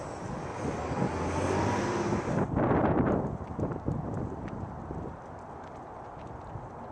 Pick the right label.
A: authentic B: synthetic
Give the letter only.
A